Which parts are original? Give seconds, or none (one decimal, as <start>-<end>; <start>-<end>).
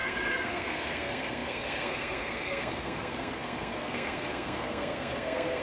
none